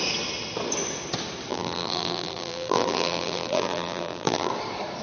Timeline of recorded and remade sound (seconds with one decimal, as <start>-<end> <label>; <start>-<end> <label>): 0.0-1.5 recorded; 1.5-4.5 remade; 4.5-5.0 recorded